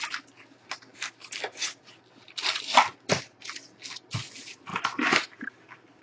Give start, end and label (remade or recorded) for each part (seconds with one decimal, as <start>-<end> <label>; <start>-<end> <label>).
0.0-0.9 recorded; 0.9-3.3 remade; 3.3-4.7 recorded; 4.7-6.0 remade